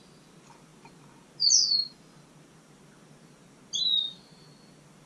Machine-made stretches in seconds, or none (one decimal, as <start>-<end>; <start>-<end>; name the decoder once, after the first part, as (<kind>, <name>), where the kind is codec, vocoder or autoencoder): none

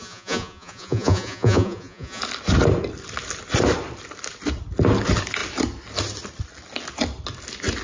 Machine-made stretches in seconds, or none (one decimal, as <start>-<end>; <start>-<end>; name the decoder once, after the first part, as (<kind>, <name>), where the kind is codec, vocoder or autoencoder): 0.0-2.2 (vocoder, Vocos)

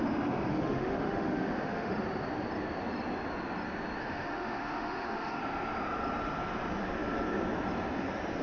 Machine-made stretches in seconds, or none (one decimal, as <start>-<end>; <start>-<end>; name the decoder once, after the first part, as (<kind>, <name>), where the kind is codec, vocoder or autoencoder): 0.5-1.9 (autoencoder, DAC-VAE); 4.0-5.4